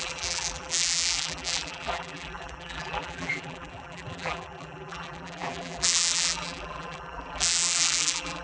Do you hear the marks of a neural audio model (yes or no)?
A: yes